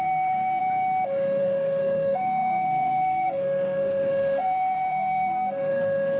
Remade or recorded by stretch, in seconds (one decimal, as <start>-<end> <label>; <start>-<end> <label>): 0.0-0.6 remade; 0.6-1.4 recorded; 1.4-6.2 remade